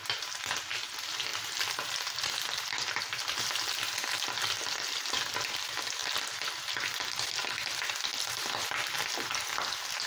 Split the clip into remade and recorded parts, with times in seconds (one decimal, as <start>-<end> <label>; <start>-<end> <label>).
0.0-1.3 recorded; 1.3-3.5 remade; 3.5-6.0 recorded; 6.0-6.7 remade; 6.7-10.1 recorded